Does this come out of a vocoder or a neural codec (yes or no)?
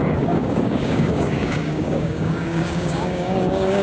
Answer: yes